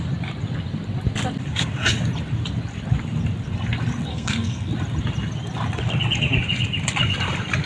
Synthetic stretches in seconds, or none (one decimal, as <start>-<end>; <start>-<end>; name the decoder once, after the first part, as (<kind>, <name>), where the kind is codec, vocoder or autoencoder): 4.1-4.7 (codec, SNAC)